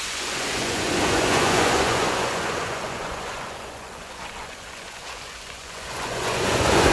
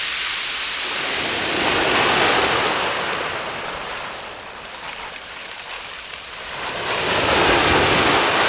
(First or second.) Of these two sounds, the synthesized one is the first